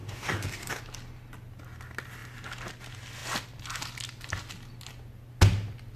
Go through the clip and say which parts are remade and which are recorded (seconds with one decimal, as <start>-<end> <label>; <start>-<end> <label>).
0.0-0.8 remade; 0.8-6.0 recorded